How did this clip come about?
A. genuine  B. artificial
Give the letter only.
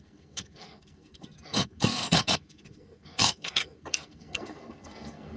B